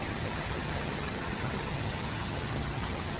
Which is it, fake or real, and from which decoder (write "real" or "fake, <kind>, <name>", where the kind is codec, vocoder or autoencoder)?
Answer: fake, vocoder, HiFi-GAN